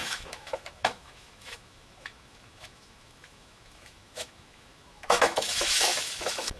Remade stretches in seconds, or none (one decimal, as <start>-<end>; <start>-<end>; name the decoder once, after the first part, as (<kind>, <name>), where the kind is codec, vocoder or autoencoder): 0.0-6.6 (autoencoder, DAC-VAE)